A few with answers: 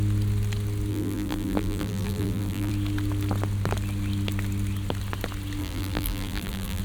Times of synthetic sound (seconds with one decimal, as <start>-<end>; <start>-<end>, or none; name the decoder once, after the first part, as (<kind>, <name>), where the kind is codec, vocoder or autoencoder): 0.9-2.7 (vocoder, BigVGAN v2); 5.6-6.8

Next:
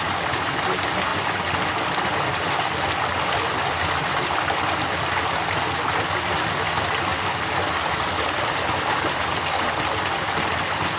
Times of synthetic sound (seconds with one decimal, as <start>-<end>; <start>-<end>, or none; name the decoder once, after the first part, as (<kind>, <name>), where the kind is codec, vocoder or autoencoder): none

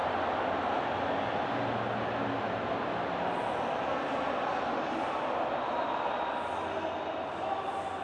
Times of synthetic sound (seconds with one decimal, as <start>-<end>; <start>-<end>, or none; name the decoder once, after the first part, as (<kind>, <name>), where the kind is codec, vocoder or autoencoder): none

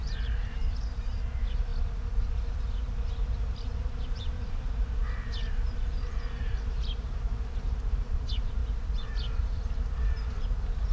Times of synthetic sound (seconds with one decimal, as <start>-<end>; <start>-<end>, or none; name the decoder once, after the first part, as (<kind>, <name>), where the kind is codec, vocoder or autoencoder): 0.0-1.7 (vocoder, BigVGAN v2); 2.6-8.6; 9.4-10.9